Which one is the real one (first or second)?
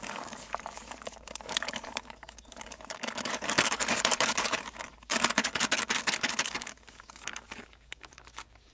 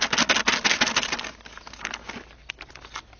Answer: second